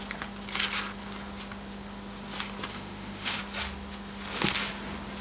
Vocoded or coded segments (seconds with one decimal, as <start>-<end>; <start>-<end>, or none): 2.7-3.4